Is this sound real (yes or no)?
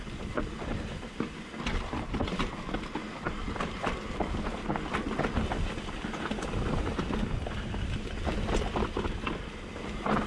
yes